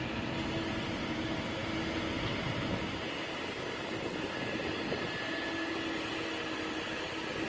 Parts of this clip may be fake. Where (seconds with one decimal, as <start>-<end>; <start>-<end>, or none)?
none